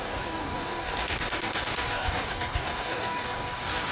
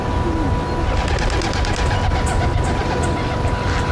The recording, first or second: second